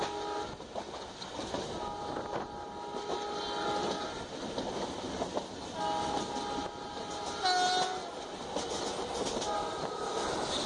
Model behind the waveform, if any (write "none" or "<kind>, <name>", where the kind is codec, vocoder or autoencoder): none